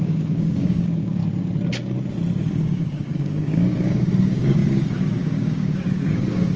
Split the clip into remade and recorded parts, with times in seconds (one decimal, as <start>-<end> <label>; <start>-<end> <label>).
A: 0.0-1.2 remade; 1.2-2.5 recorded; 2.5-6.6 remade